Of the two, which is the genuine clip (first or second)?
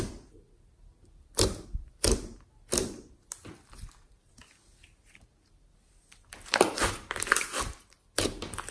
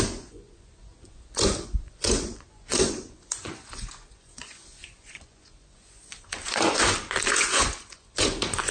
first